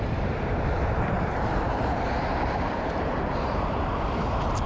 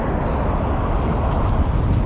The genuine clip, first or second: second